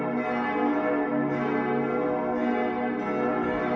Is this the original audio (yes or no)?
yes